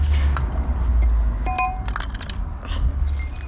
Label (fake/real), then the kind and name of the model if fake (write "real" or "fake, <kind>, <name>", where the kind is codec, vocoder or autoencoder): real